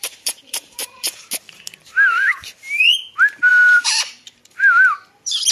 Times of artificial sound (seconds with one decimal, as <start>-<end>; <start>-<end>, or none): 0.0-1.3; 2.3-3.0; 3.5-4.4